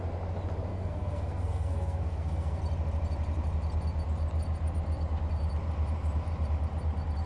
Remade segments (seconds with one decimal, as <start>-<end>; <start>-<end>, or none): 0.7-2.6